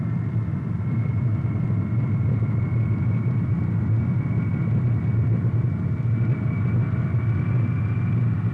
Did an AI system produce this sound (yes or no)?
no